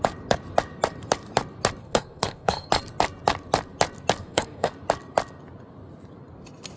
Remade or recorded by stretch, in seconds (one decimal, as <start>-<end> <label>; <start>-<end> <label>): 0.0-1.8 recorded; 1.8-2.7 remade; 2.7-4.2 recorded; 4.2-4.7 remade; 4.7-6.8 recorded